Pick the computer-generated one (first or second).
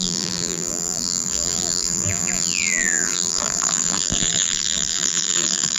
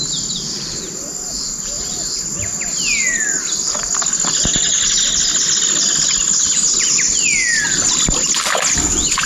first